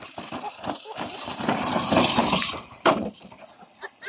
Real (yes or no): yes